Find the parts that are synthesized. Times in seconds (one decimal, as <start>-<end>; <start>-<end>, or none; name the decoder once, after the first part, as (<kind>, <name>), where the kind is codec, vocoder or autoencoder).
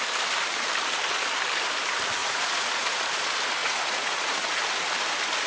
2.2-3.0 (vocoder, Vocos); 3.6-4.6